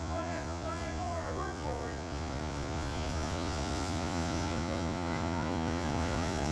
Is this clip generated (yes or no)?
yes